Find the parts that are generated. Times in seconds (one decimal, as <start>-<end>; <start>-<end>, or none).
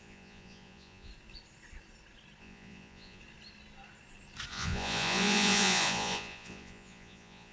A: 0.0-1.1; 2.4-3.2; 4.5-7.5